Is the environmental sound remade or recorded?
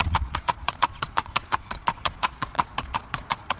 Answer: remade